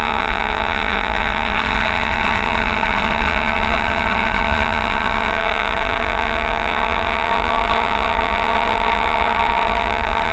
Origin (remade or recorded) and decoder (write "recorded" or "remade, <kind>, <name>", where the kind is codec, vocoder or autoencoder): remade, vocoder, HiFi-GAN